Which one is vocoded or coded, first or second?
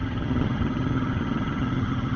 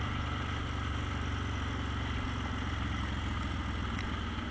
first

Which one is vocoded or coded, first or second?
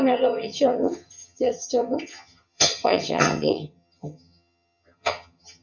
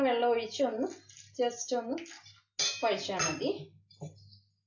first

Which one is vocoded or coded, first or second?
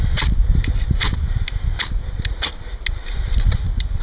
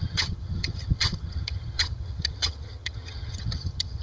second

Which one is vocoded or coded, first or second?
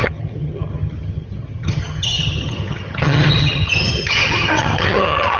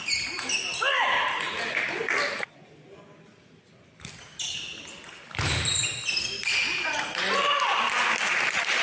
first